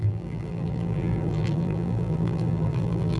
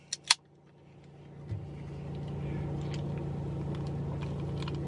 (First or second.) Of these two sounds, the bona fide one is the second